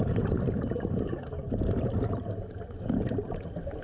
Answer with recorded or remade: recorded